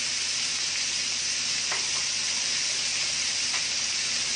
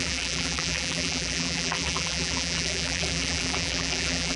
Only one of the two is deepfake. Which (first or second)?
second